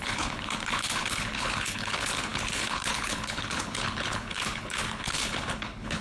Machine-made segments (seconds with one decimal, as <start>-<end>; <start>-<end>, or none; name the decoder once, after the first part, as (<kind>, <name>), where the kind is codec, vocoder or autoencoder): 0.0-6.0 (codec, HILCodec)